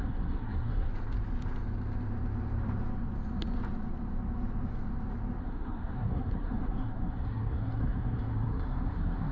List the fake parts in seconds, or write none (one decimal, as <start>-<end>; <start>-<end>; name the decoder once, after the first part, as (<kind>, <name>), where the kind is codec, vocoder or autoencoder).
0.0-0.9 (codec, SNAC); 5.4-9.3